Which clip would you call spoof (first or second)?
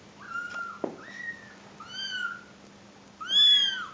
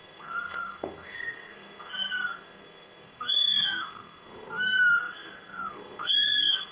second